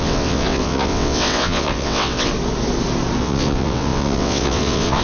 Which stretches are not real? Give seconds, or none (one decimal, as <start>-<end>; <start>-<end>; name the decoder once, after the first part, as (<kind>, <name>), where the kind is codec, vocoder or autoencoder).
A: 0.0-2.3 (vocoder, WaveNeXt); 3.2-5.0